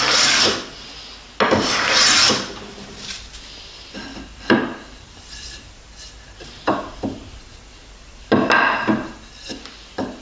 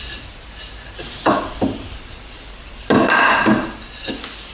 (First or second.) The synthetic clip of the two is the second